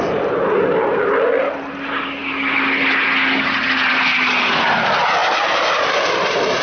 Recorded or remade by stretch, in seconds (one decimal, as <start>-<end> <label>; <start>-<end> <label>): 0.0-5.2 recorded; 5.2-6.6 remade